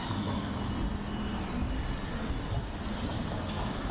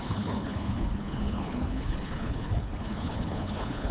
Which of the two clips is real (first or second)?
first